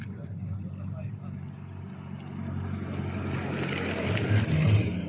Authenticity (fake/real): real